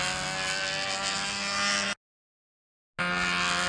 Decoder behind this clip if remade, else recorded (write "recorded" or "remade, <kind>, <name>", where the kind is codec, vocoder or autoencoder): recorded